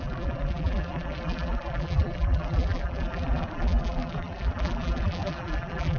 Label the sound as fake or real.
fake